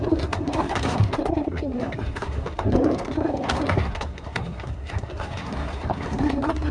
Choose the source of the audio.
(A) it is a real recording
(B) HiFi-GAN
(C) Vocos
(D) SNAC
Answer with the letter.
D